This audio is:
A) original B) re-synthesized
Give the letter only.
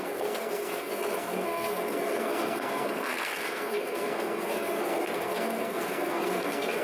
B